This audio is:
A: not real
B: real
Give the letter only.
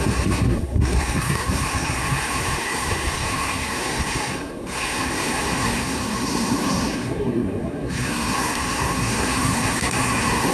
A